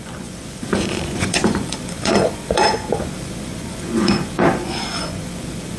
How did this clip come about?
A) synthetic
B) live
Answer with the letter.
A